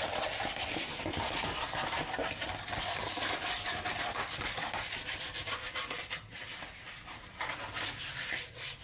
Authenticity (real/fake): real